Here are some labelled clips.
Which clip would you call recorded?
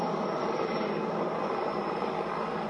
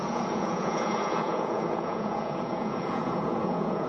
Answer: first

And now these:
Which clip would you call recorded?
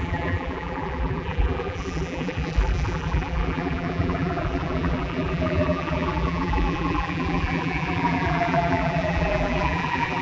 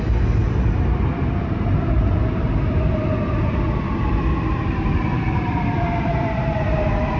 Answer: second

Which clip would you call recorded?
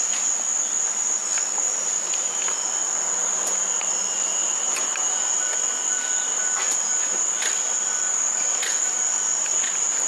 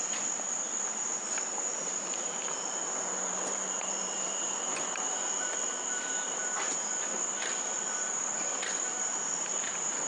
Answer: first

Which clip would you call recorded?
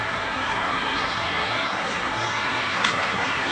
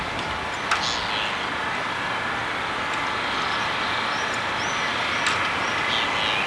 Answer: second